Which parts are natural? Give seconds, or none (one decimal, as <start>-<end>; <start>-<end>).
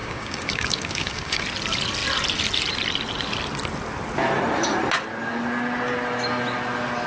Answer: 1.4-7.1